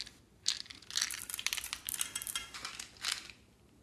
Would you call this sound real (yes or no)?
yes